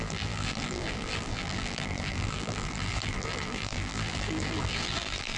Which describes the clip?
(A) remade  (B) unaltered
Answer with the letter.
A